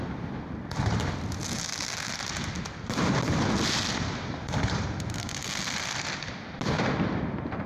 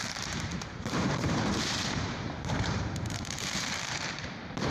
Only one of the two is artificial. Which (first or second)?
second